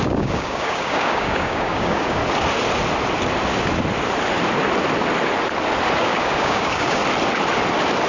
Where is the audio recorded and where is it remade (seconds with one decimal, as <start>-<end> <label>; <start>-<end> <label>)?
0.0-2.2 remade; 2.2-6.0 recorded; 6.0-7.0 remade; 7.0-8.1 recorded